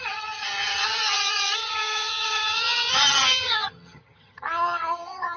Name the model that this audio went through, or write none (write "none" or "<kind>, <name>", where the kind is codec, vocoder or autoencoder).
vocoder, HiFi-GAN